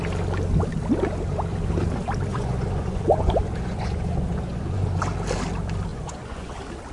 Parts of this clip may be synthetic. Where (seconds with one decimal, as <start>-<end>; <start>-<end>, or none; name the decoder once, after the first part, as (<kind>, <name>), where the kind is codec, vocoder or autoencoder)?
2.3-5.0 (vocoder, Vocos); 5.9-6.5